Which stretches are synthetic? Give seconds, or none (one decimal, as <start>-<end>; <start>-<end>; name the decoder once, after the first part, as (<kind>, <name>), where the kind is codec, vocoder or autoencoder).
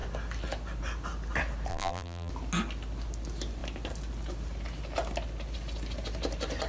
1.7-2.3 (vocoder, BigVGAN v2)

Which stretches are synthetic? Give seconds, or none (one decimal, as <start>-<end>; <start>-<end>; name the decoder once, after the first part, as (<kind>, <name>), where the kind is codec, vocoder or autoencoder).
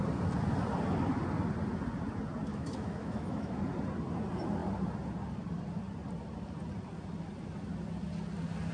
2.5-3.6 (autoencoder, DAC-VAE)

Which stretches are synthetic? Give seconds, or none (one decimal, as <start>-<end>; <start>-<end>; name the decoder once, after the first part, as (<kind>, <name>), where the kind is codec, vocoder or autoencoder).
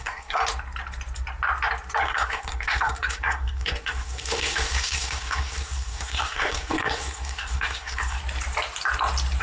0.0-0.4 (codec, SNAC); 2.0-8.2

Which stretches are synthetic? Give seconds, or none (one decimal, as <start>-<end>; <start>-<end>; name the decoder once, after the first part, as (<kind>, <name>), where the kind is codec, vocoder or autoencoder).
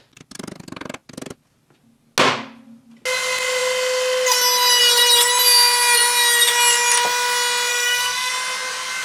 7.7-8.3 (codec, SNAC)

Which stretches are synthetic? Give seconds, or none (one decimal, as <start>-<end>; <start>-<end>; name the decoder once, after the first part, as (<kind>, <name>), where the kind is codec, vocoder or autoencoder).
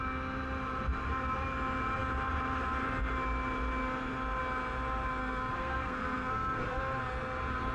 5.2-6.8 (codec, SNAC)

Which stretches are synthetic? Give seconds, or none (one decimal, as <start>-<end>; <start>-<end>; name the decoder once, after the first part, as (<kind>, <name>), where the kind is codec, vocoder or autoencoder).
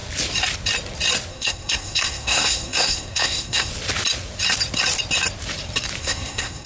1.3-3.7 (codec, SNAC); 6.0-6.7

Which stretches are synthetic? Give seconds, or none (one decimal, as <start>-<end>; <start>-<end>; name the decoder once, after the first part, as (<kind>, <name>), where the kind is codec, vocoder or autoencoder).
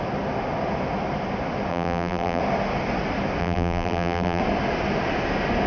1.7-2.4 (vocoder, BigVGAN v2); 3.4-4.4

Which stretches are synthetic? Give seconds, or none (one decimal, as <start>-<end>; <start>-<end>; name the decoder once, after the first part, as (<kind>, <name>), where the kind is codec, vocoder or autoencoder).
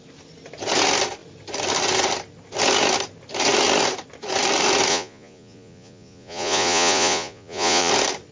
4.9-7.9 (vocoder, Vocos)